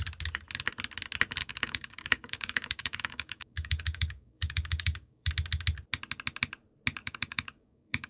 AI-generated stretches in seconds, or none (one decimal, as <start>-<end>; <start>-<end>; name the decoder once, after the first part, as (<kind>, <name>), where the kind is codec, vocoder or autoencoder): 1.4-5.3 (codec, DAC); 7.0-8.1